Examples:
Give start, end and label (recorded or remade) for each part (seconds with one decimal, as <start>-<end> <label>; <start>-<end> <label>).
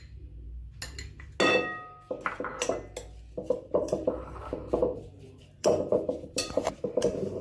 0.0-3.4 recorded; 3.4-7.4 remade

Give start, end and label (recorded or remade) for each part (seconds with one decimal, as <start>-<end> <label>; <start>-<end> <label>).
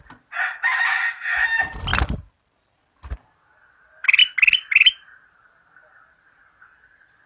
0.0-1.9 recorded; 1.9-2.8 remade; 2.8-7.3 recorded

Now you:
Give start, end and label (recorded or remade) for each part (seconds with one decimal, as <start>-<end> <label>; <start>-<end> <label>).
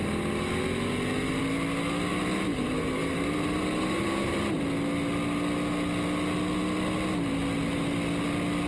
0.0-2.1 recorded; 2.1-4.6 remade; 4.6-8.7 recorded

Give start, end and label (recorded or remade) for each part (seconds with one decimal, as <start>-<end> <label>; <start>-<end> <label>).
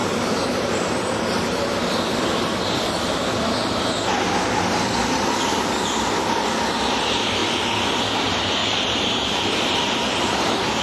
0.0-1.6 remade; 1.6-8.6 recorded; 8.6-10.8 remade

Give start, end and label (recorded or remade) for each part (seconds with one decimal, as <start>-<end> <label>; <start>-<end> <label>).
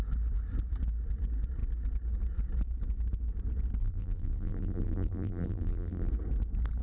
0.0-3.8 recorded; 3.8-6.1 remade; 6.1-6.8 recorded